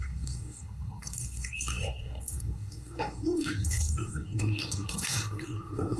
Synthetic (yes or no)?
yes